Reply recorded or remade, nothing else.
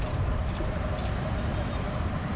remade